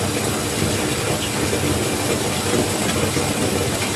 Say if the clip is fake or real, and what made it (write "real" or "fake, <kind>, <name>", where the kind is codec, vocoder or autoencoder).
fake, vocoder, BigVGAN v2